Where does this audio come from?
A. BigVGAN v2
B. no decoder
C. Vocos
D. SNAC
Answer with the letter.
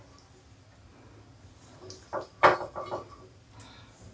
B